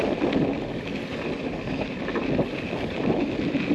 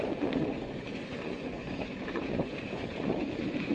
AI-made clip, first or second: second